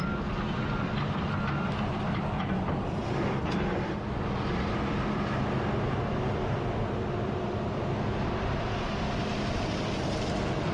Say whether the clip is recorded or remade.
recorded